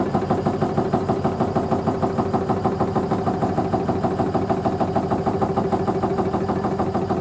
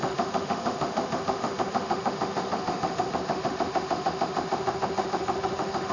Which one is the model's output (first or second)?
second